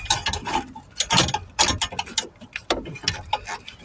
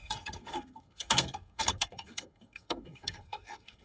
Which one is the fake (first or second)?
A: second